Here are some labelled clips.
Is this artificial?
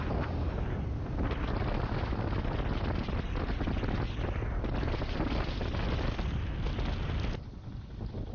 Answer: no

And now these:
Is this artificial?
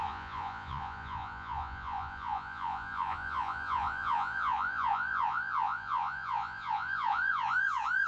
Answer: yes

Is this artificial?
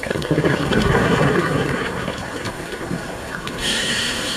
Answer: yes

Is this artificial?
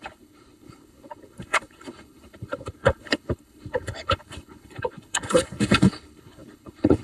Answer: yes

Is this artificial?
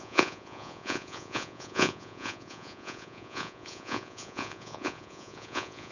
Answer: yes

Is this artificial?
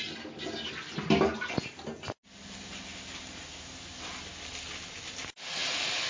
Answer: no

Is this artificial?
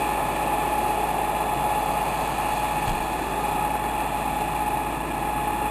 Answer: no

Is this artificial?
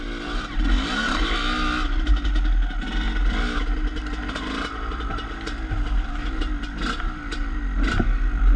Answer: no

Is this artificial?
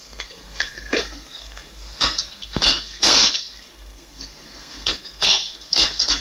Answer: yes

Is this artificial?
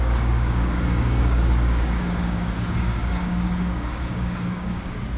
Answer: yes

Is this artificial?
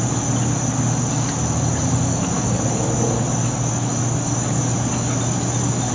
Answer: no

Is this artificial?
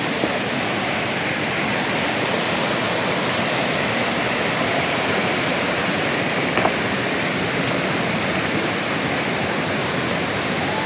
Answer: yes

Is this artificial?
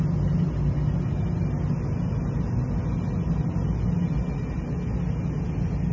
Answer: no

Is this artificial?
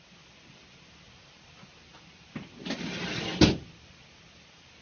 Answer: no